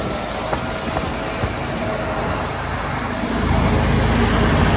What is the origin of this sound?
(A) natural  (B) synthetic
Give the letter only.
A